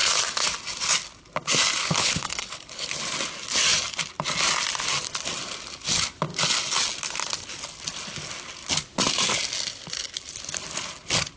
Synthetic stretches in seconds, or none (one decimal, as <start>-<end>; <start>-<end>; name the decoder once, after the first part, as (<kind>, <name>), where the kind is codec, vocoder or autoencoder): 1.8-3.0 (codec, HILCodec)